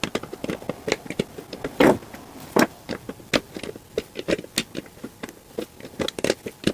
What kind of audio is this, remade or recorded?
recorded